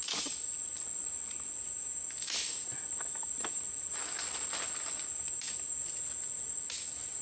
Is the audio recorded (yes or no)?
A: yes